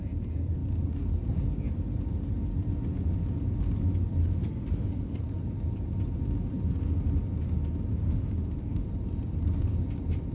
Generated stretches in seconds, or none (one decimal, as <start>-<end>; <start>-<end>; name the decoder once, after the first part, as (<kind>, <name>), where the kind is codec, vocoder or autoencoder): 4.2-5.2 (autoencoder, DAC-VAE); 7.9-8.8